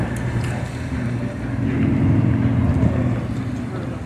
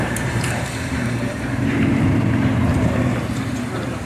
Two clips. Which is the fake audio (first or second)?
second